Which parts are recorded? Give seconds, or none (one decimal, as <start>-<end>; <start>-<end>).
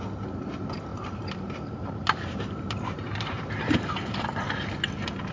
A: 0.0-0.9; 4.1-5.3